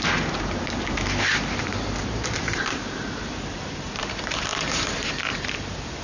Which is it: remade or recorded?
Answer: remade